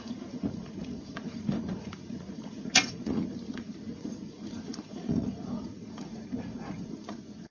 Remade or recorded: remade